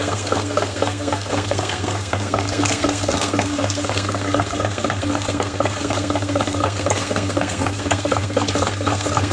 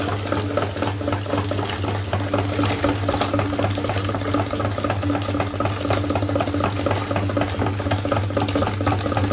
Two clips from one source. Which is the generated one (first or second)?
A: first